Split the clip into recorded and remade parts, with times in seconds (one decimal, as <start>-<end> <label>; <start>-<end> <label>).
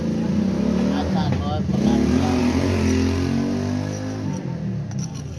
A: 0.0-5.4 recorded